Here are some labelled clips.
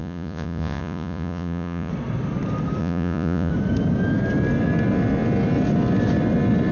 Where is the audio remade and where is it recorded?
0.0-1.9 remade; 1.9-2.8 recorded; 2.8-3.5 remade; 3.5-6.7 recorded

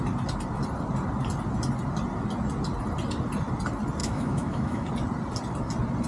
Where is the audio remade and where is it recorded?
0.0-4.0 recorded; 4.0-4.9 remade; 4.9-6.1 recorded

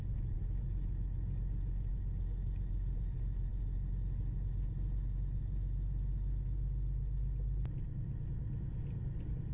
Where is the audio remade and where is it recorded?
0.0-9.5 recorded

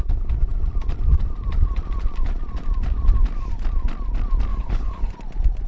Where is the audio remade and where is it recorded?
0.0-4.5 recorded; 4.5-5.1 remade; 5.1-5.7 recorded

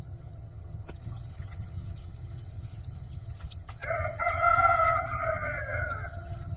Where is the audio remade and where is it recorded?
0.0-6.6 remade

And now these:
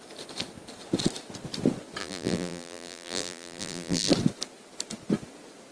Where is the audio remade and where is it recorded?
0.0-2.0 recorded; 2.0-4.1 remade; 4.1-5.7 recorded

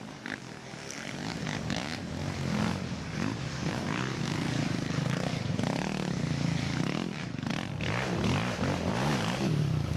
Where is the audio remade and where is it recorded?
0.0-7.5 remade; 7.5-8.9 recorded; 8.9-10.0 remade